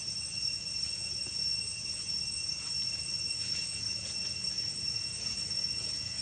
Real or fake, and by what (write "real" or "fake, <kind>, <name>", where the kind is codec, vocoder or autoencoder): fake, vocoder, Vocos